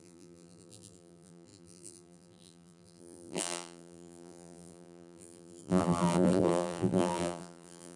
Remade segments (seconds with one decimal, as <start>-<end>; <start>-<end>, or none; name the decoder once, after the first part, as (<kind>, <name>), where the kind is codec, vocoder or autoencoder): 0.0-8.0 (vocoder, BigVGAN v2)